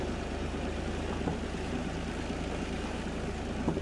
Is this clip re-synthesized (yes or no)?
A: yes